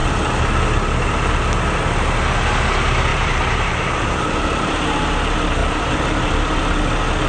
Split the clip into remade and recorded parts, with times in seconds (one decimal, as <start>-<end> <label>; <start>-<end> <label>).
0.0-3.1 recorded; 3.1-5.0 remade; 5.0-5.6 recorded; 5.6-6.7 remade; 6.7-7.3 recorded